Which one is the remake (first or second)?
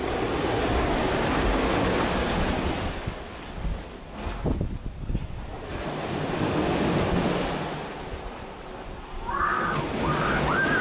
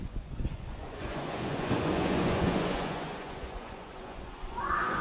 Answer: second